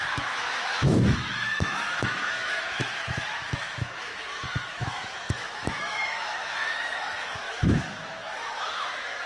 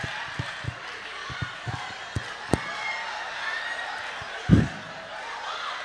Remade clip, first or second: first